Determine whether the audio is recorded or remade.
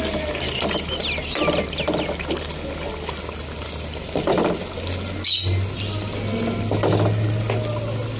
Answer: recorded